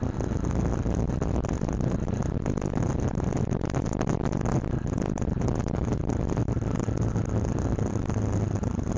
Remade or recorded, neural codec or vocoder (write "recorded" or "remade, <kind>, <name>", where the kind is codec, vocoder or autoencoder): recorded